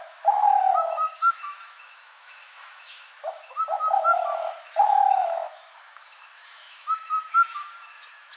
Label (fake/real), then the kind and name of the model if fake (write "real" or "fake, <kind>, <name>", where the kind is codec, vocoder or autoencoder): fake, autoencoder, DAC-VAE